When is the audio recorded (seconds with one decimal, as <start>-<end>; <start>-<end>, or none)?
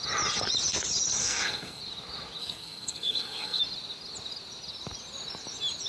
0.0-1.2; 1.8-2.4; 3.6-5.9